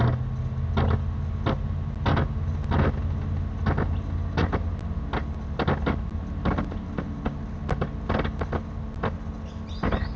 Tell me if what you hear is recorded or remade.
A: recorded